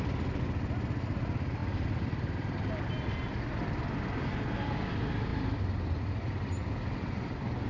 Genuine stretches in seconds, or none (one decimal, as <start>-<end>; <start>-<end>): 0.0-7.7